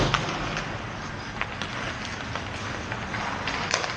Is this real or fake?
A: real